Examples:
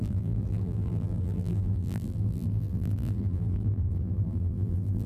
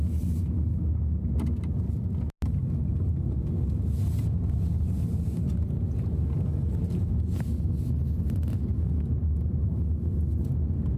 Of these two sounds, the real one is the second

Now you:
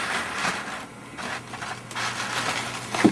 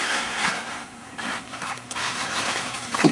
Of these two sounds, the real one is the first